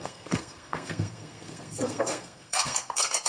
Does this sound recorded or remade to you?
remade